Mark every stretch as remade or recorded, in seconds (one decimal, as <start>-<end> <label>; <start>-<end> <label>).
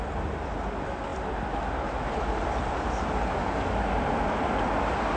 0.0-5.2 recorded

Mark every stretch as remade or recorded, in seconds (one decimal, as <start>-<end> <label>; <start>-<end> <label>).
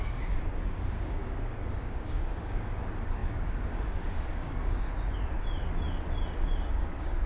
0.0-4.9 remade; 4.9-6.7 recorded; 6.7-7.3 remade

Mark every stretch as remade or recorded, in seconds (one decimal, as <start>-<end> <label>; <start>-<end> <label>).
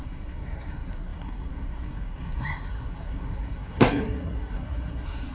0.0-5.3 remade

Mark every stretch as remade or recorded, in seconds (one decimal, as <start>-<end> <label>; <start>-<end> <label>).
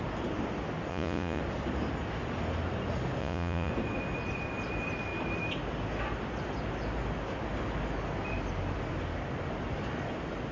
0.0-0.9 recorded; 0.9-1.4 remade; 1.4-3.2 recorded; 3.2-3.7 remade; 3.7-10.5 recorded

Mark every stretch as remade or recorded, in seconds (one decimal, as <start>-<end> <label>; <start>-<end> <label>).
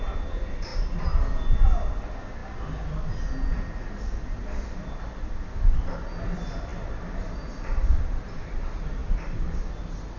0.0-10.2 recorded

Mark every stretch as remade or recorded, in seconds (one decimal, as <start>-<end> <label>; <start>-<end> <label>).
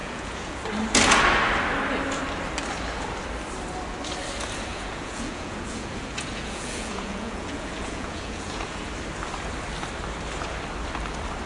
0.0-0.6 remade; 0.6-4.7 recorded; 4.7-8.9 remade; 8.9-11.5 recorded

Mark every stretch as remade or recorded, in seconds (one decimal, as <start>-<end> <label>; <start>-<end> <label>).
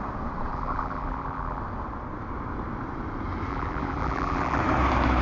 0.0-0.5 recorded; 0.5-1.6 remade; 1.6-3.5 recorded; 3.5-4.6 remade; 4.6-5.2 recorded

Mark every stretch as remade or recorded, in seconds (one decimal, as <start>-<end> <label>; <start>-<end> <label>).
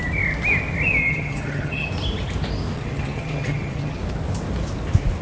0.0-1.0 recorded; 1.0-1.9 remade; 1.9-2.8 recorded; 2.8-4.0 remade; 4.0-5.2 recorded